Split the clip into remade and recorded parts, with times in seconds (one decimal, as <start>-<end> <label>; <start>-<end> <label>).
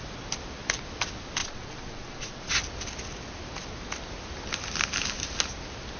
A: 0.0-1.4 recorded; 1.4-2.5 remade; 2.5-6.0 recorded